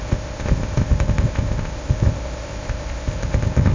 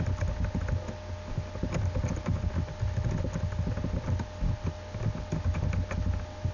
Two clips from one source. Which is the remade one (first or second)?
first